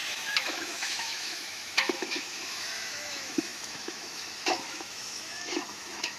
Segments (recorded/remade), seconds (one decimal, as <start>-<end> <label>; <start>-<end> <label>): 0.0-6.2 remade